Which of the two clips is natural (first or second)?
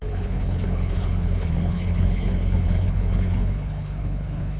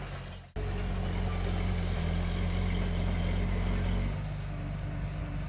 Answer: second